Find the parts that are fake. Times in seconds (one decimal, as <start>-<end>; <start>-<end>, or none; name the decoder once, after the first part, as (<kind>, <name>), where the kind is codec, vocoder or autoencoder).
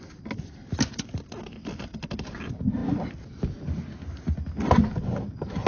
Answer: none